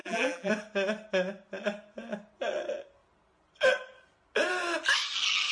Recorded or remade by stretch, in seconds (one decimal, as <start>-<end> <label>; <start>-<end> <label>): 0.0-0.5 remade; 0.5-5.5 recorded